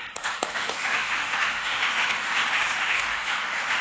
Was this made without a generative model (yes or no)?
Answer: no